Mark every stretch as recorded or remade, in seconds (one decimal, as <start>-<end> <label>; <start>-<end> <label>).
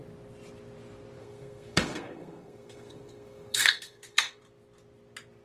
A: 0.0-1.2 recorded; 1.2-4.4 remade; 4.4-5.4 recorded